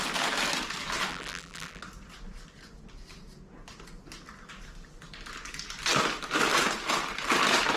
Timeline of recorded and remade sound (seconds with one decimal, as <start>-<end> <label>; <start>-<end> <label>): 0.0-1.1 recorded; 1.1-1.8 remade; 1.8-7.8 recorded

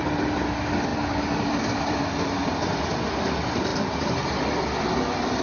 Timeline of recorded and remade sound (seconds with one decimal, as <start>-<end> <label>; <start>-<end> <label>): 0.0-0.9 recorded; 0.9-2.8 remade; 2.8-3.7 recorded; 3.7-4.4 remade; 4.4-5.4 recorded